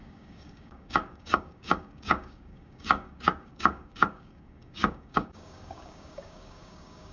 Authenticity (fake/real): fake